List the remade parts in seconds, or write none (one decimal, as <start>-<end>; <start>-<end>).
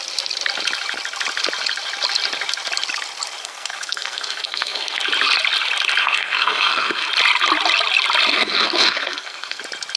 3.4-5.0; 6.0-7.1; 8.3-9.6